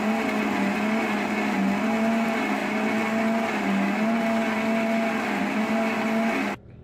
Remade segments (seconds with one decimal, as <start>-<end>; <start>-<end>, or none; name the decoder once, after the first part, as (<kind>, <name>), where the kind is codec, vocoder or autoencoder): none